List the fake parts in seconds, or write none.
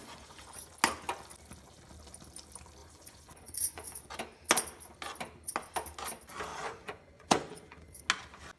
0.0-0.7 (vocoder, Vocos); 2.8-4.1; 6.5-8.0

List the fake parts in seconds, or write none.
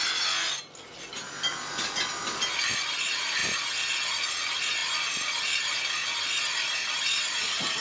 none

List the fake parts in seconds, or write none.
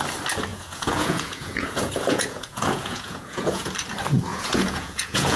0.5-3.7 (vocoder, Vocos); 4.3-5.4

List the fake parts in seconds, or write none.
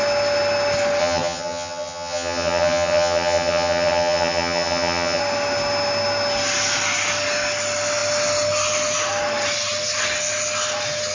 1.0-5.2 (vocoder, HiFi-GAN)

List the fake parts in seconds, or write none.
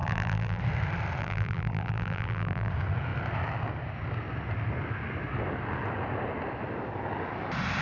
0.0-0.6 (vocoder, BigVGAN v2); 1.2-2.7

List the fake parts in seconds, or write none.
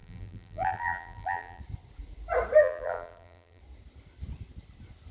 0.0-1.6 (vocoder, BigVGAN v2); 2.6-3.6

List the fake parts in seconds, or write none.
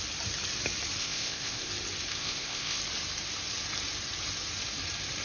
1.0-1.7 (codec, ZipCodec); 2.1-2.8